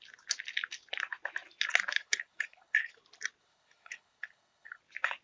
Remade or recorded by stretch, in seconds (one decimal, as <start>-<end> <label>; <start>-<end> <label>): 0.0-2.0 recorded; 2.0-3.0 remade; 3.0-3.4 recorded; 3.4-4.8 remade; 4.8-5.2 recorded